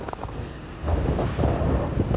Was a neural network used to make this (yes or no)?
yes